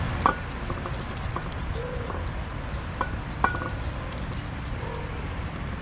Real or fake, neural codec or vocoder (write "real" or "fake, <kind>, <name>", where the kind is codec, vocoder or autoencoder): real